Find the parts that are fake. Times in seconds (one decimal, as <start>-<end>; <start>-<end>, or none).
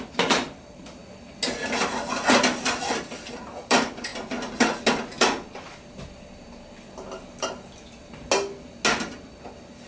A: 0.0-1.0; 3.1-4.1; 9.0-9.9